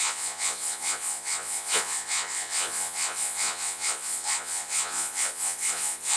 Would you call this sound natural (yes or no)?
no